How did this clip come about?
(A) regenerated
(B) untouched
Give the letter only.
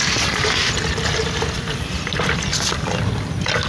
B